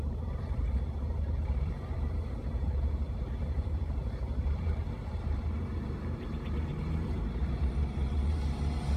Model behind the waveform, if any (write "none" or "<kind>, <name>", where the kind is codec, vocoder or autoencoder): vocoder, BigVGAN v2